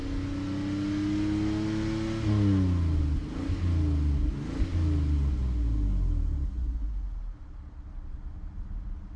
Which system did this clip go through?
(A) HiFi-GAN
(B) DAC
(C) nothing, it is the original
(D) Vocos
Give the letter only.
C